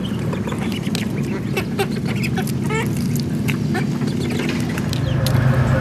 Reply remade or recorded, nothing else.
recorded